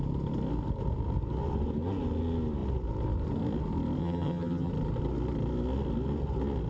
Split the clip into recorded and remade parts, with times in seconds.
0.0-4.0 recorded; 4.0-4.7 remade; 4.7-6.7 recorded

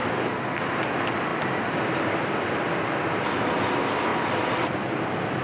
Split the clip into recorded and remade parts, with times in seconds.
0.0-5.4 recorded

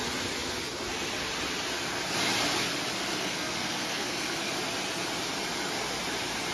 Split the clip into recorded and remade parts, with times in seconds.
0.0-3.1 recorded; 3.1-4.5 remade; 4.5-6.5 recorded

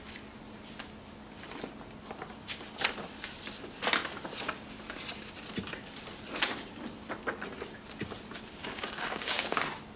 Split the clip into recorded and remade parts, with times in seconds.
0.0-8.6 recorded; 8.6-9.6 remade; 9.6-10.0 recorded

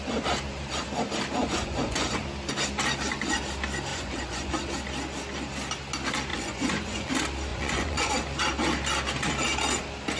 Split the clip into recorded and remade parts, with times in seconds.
0.0-1.4 recorded; 1.4-2.2 remade; 2.2-3.9 recorded; 3.9-4.5 remade; 4.5-6.3 recorded; 6.3-7.1 remade; 7.1-7.5 recorded; 7.5-8.1 remade; 8.1-10.2 recorded

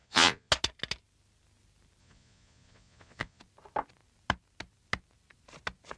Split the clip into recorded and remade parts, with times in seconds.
0.0-0.5 remade; 0.5-2.0 recorded; 2.0-3.4 remade; 3.4-6.0 recorded

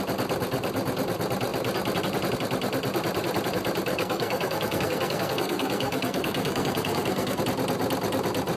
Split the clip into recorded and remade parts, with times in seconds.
0.0-3.9 recorded; 3.9-7.4 remade; 7.4-8.6 recorded